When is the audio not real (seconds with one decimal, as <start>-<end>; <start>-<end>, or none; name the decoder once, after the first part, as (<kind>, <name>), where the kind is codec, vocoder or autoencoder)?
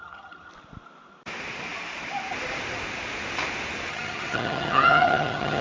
0.0-0.5 (vocoder, HiFi-GAN); 3.9-5.6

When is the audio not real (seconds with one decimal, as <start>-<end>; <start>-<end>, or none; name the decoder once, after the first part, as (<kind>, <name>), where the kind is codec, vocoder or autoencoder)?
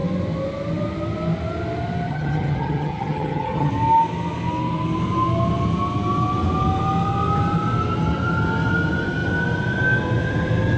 2.1-3.7 (vocoder, HiFi-GAN)